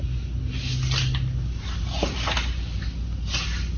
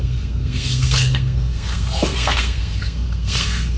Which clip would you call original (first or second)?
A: first